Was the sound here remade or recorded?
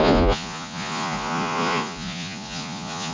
remade